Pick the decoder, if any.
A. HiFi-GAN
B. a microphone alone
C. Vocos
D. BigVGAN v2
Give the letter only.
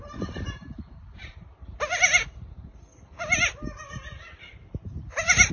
D